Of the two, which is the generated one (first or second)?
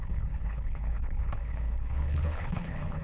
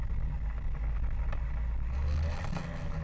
first